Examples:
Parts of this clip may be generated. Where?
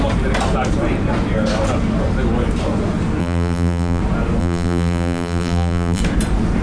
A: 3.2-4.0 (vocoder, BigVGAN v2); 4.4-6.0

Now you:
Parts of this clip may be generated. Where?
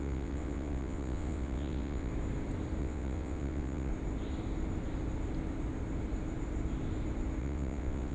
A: 0.0-2.1 (vocoder, WaveNeXt); 2.8-3.9; 7.4-8.1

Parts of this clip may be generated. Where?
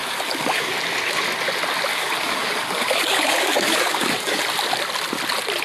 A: 0.0-0.7 (codec, DAC); 1.9-4.4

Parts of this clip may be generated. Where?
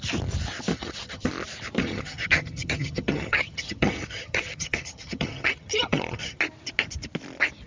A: 0.7-1.3 (vocoder, HiFi-GAN); 1.8-6.4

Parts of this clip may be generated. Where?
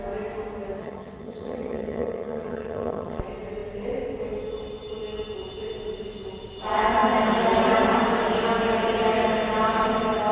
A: 0.8-3.2 (vocoder, HiFi-GAN)